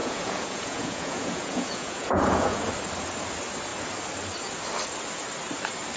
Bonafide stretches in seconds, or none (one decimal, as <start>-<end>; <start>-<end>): 2.7-6.0